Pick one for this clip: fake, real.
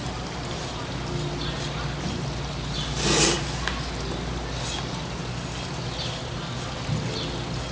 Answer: real